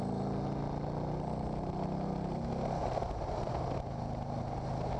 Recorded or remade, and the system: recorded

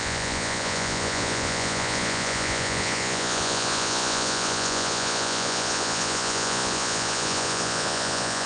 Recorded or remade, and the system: remade, vocoder, Vocos